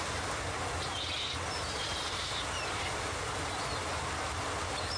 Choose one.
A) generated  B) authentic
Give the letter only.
B